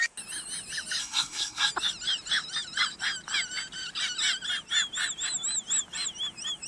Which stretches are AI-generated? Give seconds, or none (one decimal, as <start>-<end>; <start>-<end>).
1.0-1.7